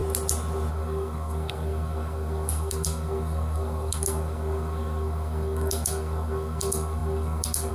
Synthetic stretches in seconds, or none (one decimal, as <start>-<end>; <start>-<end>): 0.7-7.7

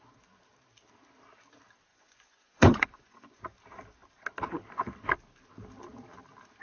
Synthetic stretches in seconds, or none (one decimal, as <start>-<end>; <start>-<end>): 1.9-3.4

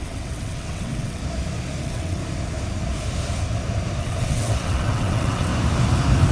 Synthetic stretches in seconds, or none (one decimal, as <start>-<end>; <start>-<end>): 0.0-1.2; 1.8-2.2; 4.0-5.5

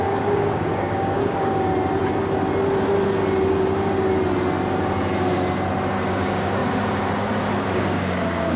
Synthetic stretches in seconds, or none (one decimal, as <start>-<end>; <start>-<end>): 0.0-1.7; 6.1-6.6; 7.7-8.6

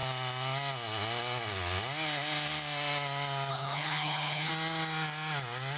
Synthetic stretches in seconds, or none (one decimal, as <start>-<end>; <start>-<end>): 3.5-4.5